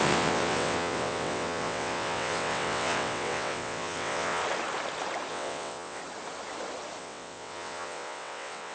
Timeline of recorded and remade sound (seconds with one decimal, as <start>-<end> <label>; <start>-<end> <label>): 0.0-4.4 remade; 4.4-5.3 recorded; 5.3-6.0 remade; 6.0-7.0 recorded; 7.0-8.7 remade